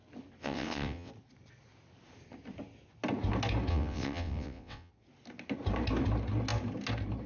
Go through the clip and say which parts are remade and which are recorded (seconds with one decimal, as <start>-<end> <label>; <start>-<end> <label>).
0.0-0.4 recorded; 0.4-1.1 remade; 1.1-3.7 recorded; 3.7-4.9 remade; 4.9-7.3 recorded